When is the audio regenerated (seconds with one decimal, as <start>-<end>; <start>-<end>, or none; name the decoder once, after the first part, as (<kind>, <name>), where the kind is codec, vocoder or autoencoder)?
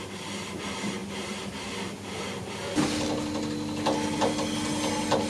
none